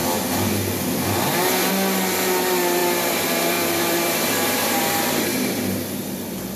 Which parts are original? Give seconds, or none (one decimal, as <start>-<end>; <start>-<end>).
0.0-2.8; 4.7-6.6